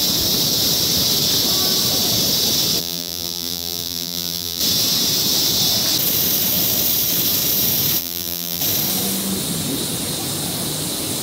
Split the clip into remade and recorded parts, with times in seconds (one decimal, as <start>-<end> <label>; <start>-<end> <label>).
0.0-2.8 recorded; 2.8-4.6 remade; 4.6-8.0 recorded; 8.0-8.6 remade; 8.6-11.2 recorded